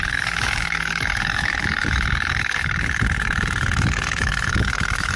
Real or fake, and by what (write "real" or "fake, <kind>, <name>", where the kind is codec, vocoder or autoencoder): fake, codec, DAC